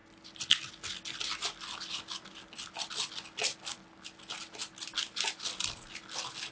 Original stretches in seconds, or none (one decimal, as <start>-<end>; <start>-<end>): 0.0-6.5